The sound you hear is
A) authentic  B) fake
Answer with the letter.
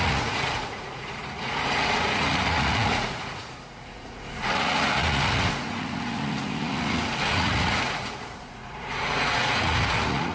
B